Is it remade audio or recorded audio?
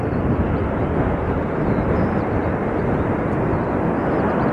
recorded